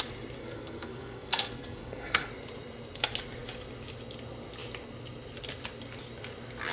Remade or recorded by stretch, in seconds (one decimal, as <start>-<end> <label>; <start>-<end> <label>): 0.0-0.4 recorded; 0.4-2.3 remade; 2.3-6.7 recorded